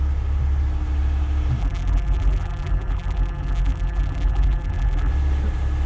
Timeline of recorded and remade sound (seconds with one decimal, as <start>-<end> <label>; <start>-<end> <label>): 0.0-1.6 recorded; 1.6-5.1 remade; 5.1-5.9 recorded

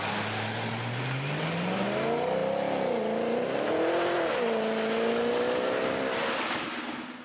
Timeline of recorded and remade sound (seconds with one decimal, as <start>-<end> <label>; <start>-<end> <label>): 0.0-7.2 recorded